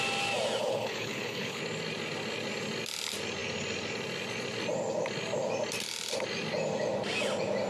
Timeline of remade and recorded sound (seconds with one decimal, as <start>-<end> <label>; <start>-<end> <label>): 0.0-0.6 recorded; 0.6-1.6 remade; 1.6-7.7 recorded

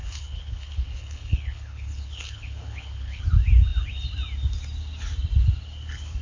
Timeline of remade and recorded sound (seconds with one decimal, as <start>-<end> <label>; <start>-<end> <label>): 0.0-3.2 remade; 3.2-6.2 recorded

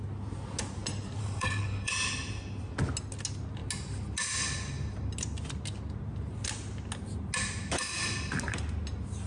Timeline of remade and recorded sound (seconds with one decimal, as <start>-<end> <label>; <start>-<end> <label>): 0.0-1.2 recorded; 1.2-1.9 remade; 1.9-9.3 recorded